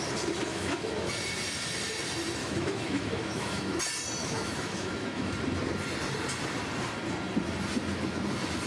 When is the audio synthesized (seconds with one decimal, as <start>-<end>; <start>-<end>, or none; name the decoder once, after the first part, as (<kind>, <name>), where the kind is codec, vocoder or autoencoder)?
0.5-1.1 (autoencoder, DAC-VAE); 2.4-3.8; 4.2-5.3